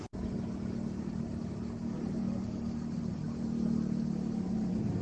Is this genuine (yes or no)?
yes